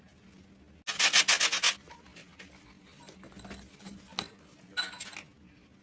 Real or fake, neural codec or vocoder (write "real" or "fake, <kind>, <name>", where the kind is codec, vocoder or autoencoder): real